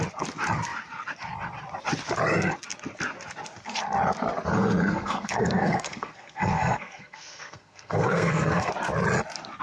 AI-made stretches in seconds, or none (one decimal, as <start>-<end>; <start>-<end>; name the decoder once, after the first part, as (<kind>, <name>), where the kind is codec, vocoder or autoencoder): 4.8-8.7 (codec, SNAC)